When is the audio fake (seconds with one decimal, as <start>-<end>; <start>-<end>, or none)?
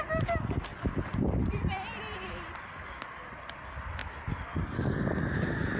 0.7-3.4